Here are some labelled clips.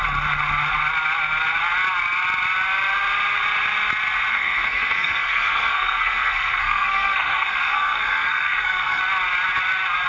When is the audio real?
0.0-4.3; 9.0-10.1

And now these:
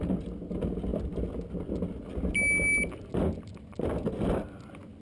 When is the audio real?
0.0-5.0